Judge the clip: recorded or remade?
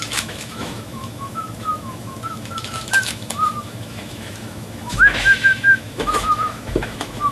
remade